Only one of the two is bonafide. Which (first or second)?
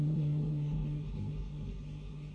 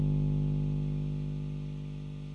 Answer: second